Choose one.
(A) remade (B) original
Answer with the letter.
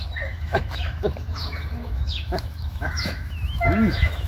A